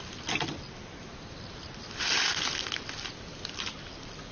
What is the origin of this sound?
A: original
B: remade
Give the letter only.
A